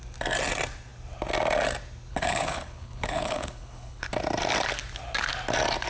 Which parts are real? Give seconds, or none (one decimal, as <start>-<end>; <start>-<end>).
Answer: 0.0-2.1; 4.1-5.9